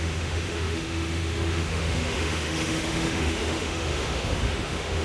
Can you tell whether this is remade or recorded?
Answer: remade